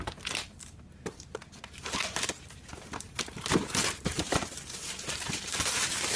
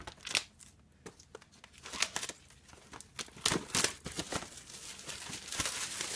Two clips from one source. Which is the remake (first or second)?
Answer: first